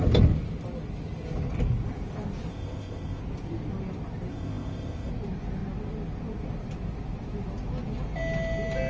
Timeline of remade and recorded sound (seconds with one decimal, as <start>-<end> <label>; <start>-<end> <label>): 0.0-2.5 recorded; 2.5-3.2 remade; 3.2-4.3 recorded; 4.3-5.1 remade; 5.1-8.9 recorded